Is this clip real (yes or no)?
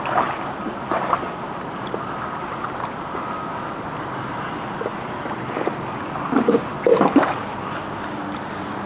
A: no